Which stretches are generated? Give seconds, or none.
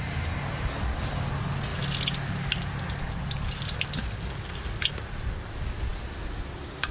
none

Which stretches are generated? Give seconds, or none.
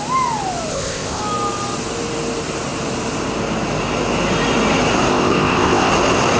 0.7-1.2 (codec, ZipCodec); 5.1-5.9